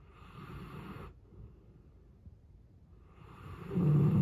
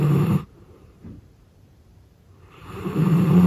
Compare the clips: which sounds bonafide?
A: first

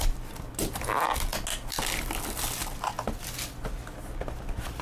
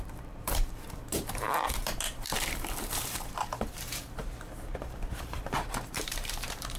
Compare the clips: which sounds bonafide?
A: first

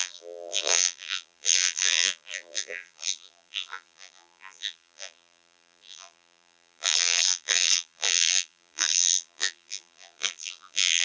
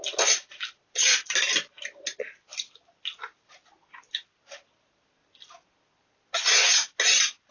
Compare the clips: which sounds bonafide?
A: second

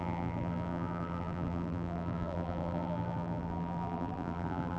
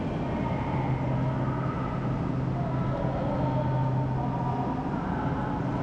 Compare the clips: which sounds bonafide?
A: second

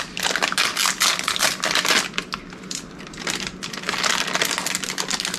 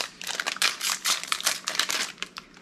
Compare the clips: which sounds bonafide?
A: first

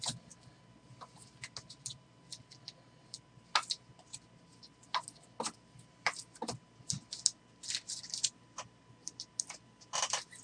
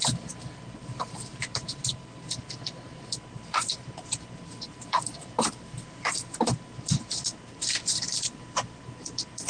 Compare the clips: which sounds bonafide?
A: first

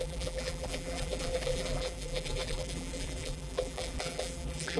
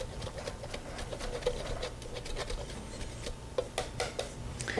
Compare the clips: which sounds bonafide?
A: second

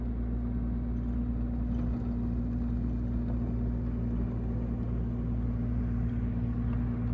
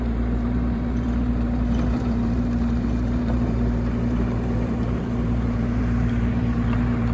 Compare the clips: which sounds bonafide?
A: first